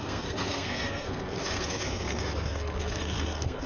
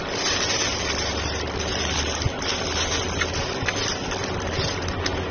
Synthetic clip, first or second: first